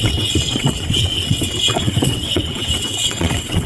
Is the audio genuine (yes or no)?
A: no